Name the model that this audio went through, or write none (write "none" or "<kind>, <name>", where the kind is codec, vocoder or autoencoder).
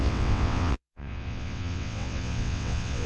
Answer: vocoder, WaveNeXt